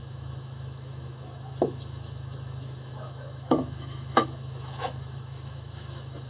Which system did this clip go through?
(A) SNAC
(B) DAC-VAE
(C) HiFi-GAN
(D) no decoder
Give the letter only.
B